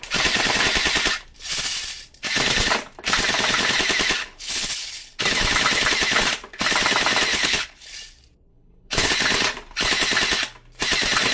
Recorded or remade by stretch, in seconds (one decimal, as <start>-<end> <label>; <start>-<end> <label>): 0.0-4.2 recorded; 4.2-5.2 remade; 5.2-7.3 recorded; 7.3-7.9 remade; 7.9-8.5 recorded; 8.5-9.1 remade; 9.1-11.3 recorded